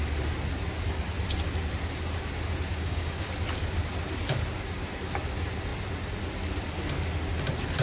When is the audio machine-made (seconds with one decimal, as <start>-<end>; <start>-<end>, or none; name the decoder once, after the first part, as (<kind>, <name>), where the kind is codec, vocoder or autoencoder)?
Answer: 2.7-3.3 (codec, DAC)